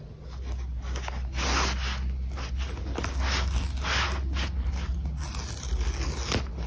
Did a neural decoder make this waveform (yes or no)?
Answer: no